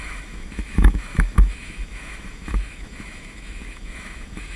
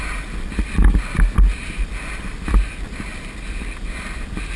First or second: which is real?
second